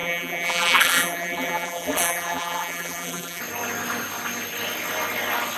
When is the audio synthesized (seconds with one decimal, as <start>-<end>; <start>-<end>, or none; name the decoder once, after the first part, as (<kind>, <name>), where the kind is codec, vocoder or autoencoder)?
0.0-3.4 (vocoder, BigVGAN v2)

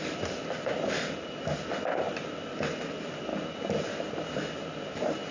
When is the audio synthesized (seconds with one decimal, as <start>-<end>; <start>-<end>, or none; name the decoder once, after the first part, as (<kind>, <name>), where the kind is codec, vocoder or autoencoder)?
none

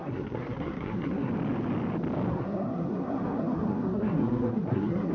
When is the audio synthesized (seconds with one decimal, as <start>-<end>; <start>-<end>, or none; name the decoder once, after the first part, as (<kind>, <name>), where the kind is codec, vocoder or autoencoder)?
0.0-1.3 (codec, SNAC); 2.3-5.1